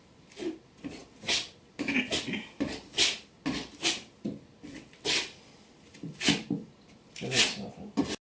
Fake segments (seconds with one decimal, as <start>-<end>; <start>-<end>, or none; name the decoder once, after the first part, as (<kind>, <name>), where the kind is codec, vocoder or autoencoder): none